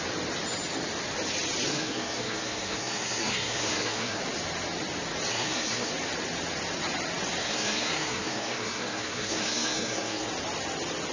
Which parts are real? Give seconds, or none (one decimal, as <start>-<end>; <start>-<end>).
0.0-1.7; 4.2-5.3; 5.9-7.4; 10.3-11.1